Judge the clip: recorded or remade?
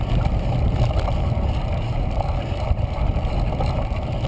recorded